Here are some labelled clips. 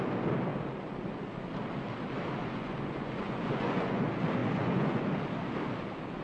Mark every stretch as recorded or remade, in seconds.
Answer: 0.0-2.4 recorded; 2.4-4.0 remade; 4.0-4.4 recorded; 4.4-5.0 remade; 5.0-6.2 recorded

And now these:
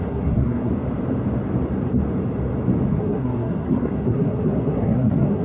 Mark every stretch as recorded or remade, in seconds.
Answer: 0.0-0.7 remade; 0.7-2.9 recorded; 2.9-5.4 remade

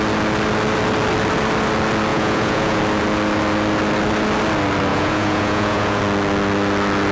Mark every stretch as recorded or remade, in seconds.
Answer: 0.0-2.1 recorded; 2.1-2.8 remade; 2.8-4.9 recorded; 4.9-6.0 remade; 6.0-7.1 recorded

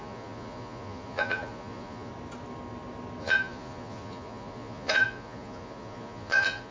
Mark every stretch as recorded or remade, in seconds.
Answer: 0.0-2.1 remade; 2.1-3.2 recorded; 3.2-6.7 remade

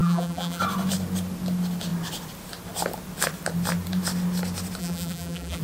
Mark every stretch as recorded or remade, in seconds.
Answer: 0.0-0.6 remade; 0.6-4.8 recorded; 4.8-5.6 remade